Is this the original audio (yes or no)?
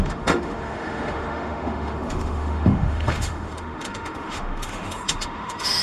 no